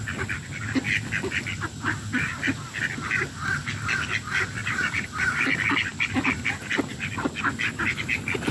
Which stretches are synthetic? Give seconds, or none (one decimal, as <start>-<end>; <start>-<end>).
4.6-5.4

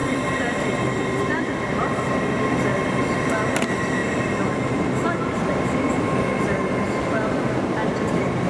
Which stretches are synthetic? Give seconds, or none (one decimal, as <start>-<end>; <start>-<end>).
0.0-1.6

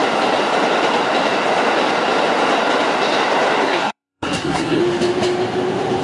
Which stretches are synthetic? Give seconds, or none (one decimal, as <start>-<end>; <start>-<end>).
3.6-4.8

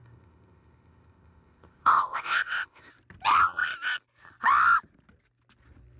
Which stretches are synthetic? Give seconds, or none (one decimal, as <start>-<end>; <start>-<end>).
0.0-2.9

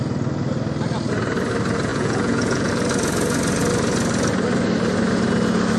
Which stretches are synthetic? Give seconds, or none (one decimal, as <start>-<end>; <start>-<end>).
1.9-2.7

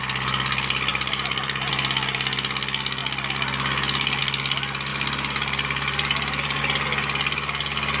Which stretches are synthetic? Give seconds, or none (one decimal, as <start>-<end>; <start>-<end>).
0.9-1.7; 4.9-6.6

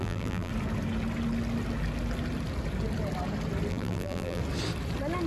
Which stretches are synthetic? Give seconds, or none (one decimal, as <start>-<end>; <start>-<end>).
0.0-0.5; 3.7-4.4

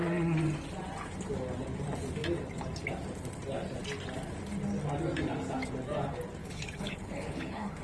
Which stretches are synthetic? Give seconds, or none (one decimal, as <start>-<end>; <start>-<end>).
6.4-7.8